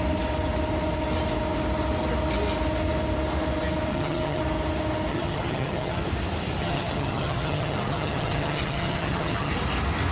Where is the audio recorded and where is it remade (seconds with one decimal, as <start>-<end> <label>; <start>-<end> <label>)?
0.0-3.9 recorded; 3.9-4.4 remade; 4.4-5.1 recorded; 5.1-6.0 remade; 6.0-6.6 recorded; 6.6-9.5 remade; 9.5-10.1 recorded